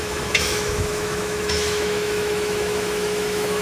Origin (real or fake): fake